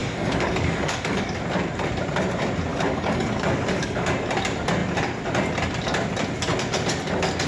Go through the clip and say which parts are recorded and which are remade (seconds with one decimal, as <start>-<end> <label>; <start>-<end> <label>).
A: 0.0-1.4 remade; 1.4-2.7 recorded; 2.7-4.1 remade; 4.1-7.5 recorded